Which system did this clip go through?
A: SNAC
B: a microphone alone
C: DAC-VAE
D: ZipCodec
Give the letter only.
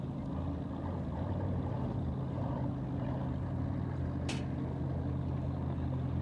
B